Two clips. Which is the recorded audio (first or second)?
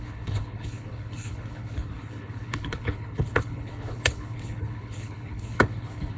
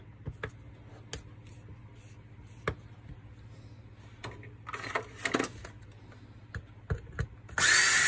second